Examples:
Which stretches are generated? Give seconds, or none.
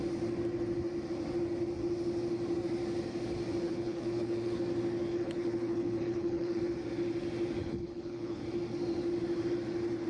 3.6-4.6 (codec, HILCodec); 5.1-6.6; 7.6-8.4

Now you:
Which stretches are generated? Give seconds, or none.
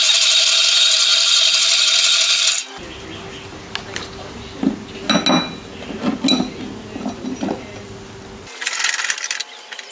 none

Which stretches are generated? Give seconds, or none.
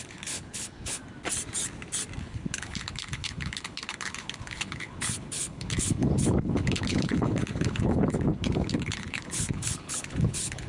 0.0-1.0 (codec, HILCodec); 2.2-10.7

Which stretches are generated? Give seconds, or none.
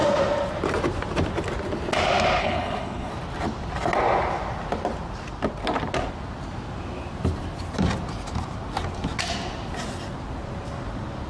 2.4-3.1 (codec, HILCodec)